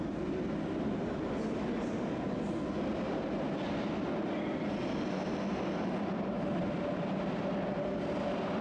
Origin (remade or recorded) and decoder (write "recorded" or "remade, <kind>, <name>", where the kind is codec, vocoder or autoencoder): recorded